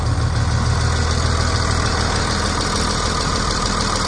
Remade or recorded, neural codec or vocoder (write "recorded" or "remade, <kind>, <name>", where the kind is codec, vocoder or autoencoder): recorded